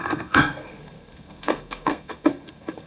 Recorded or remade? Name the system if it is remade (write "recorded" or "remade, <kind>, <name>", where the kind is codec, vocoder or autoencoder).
remade, codec, SNAC